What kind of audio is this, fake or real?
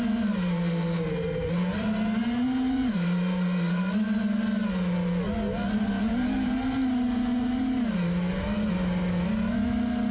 real